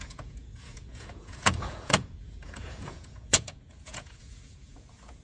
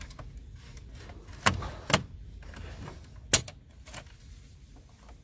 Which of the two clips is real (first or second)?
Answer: second